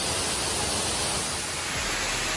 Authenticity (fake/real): real